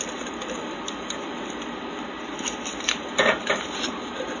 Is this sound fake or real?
fake